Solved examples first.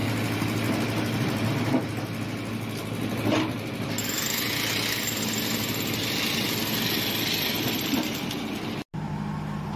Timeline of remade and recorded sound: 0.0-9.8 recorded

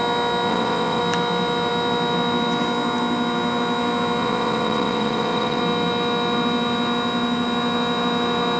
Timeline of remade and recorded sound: 0.0-0.5 recorded; 0.5-1.0 remade; 1.0-4.2 recorded; 4.2-5.6 remade; 5.6-8.6 recorded